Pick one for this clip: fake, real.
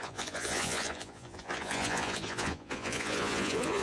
fake